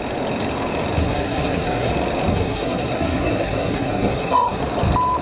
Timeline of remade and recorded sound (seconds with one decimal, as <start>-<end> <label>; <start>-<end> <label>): 0.0-1.0 recorded; 1.0-1.9 remade; 1.9-2.3 recorded; 2.3-4.6 remade; 4.6-5.2 recorded